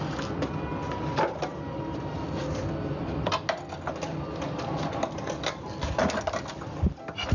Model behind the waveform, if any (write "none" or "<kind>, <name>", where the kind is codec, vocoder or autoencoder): none